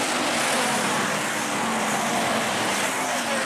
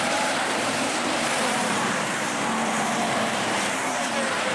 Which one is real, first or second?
first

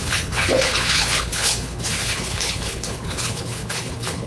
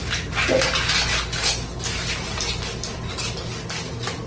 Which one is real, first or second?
second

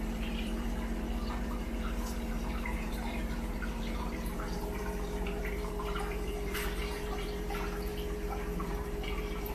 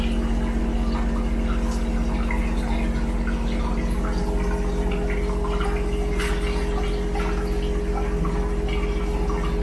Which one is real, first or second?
second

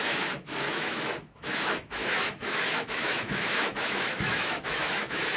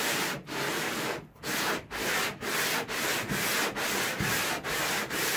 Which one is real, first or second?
second